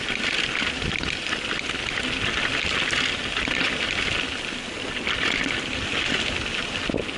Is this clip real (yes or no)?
yes